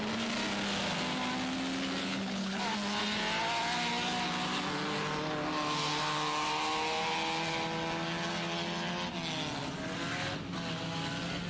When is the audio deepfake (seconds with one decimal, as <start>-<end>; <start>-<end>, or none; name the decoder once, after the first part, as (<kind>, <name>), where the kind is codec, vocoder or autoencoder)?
2.0-2.6 (codec, HILCodec)